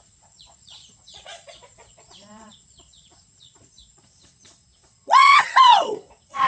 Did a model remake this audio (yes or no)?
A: yes